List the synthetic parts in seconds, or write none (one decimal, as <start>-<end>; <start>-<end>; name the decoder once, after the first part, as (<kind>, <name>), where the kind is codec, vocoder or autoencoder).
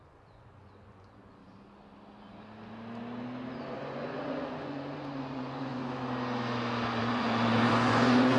0.0-1.4 (vocoder, Vocos); 3.6-5.8; 7.0-8.4